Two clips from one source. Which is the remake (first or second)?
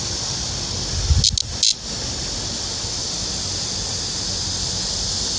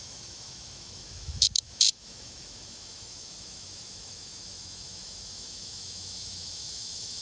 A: second